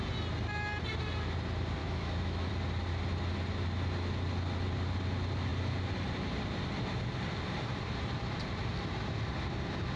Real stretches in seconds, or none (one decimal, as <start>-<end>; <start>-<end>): 0.0-1.8; 2.5-10.0